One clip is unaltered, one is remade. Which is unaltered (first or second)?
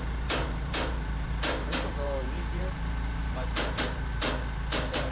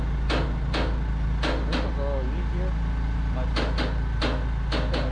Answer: second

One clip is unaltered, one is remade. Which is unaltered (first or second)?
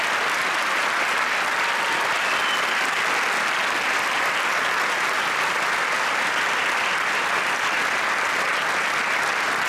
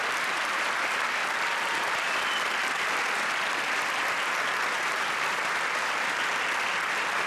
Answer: first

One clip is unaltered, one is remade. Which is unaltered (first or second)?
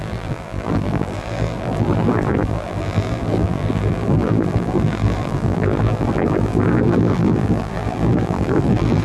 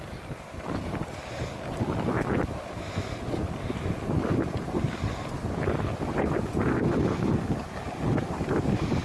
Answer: second